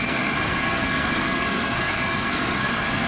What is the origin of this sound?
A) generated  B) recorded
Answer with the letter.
A